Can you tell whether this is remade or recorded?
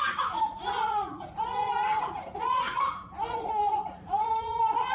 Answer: remade